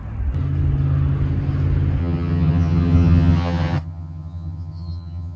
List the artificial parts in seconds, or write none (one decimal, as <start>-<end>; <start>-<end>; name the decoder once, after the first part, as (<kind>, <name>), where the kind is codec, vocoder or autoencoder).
2.0-5.4 (vocoder, HiFi-GAN)